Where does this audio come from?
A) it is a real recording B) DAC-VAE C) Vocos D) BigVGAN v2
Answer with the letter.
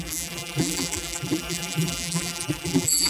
D